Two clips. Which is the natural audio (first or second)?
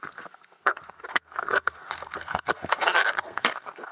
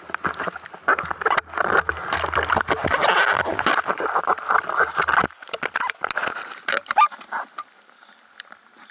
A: second